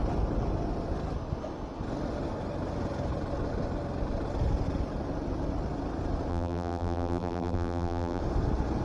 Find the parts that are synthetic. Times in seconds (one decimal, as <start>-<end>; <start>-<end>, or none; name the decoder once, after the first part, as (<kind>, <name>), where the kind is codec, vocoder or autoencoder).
6.3-8.2 (vocoder, BigVGAN v2)